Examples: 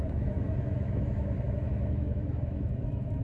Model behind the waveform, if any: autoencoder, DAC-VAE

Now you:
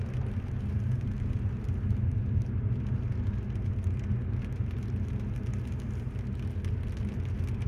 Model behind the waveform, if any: none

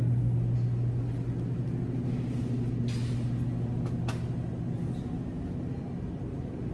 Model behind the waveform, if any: none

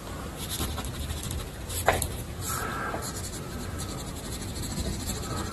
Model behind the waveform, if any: none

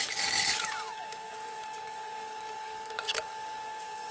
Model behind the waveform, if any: codec, DAC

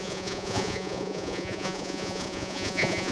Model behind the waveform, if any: vocoder, Vocos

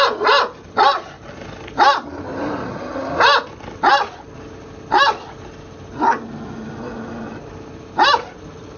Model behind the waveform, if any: none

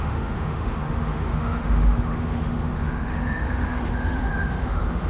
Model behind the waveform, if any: autoencoder, DAC-VAE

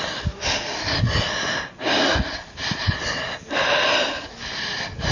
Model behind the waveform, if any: none